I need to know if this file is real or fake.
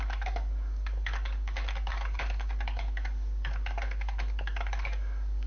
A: fake